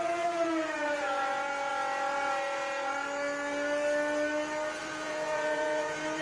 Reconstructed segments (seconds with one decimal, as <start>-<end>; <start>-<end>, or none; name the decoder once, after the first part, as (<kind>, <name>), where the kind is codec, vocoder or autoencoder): 0.0-1.7 (vocoder, Vocos); 4.8-6.2

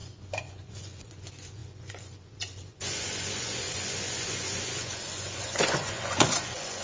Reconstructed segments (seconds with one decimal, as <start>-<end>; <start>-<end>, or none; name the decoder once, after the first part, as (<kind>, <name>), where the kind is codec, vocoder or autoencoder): 0.0-6.8 (vocoder, Vocos)

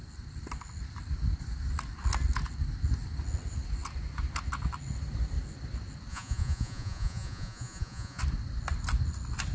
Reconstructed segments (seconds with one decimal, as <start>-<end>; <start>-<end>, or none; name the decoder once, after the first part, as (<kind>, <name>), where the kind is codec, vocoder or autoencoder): 6.1-8.2 (vocoder, Vocos)